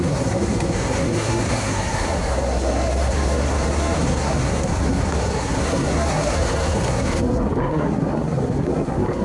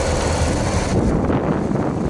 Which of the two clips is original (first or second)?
second